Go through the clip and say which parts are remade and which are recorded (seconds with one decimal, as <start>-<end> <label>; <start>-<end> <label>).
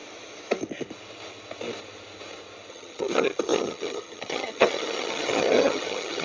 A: 0.0-2.7 recorded; 2.7-6.2 remade